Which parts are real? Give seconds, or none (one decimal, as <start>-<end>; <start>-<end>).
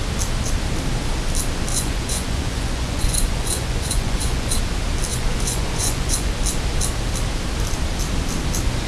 0.0-1.7; 4.6-5.1; 6.3-8.9